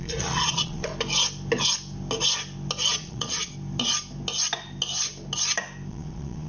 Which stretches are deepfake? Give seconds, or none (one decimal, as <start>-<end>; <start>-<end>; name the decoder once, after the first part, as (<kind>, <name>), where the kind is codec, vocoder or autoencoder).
0.0-0.9 (vocoder, Vocos); 2.9-3.5; 5.9-6.5